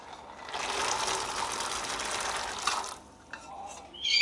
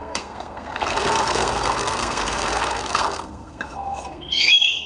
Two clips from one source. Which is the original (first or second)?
first